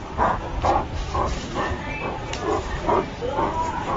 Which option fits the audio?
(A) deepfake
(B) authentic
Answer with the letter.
A